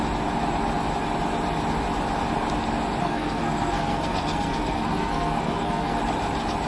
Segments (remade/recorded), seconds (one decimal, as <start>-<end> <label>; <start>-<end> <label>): 0.0-3.0 recorded; 3.0-6.0 remade; 6.0-6.7 recorded